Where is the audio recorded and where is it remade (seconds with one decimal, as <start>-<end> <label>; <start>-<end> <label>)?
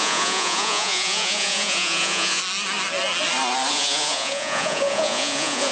0.0-2.4 remade; 2.4-3.7 recorded; 3.7-5.7 remade